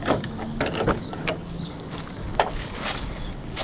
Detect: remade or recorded remade